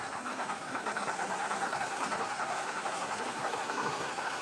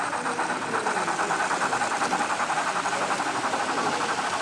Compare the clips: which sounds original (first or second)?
second